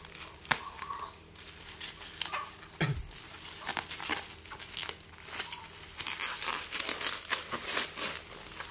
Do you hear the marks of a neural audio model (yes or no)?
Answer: no